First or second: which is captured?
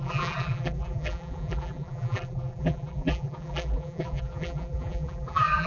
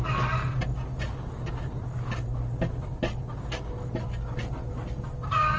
second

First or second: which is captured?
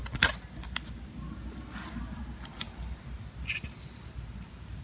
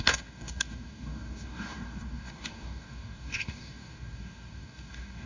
first